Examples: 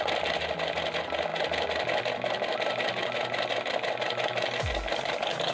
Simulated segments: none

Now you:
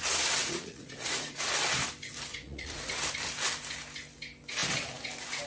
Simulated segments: 0.4-1.4; 2.3-3.0

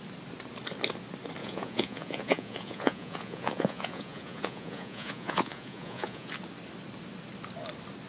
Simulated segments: 1.4-6.3

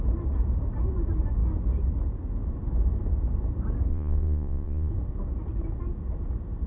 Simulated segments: 3.9-4.9